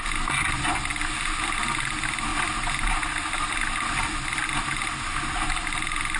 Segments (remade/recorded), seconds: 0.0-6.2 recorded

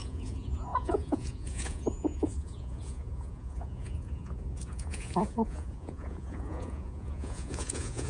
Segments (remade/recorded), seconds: 0.0-8.1 remade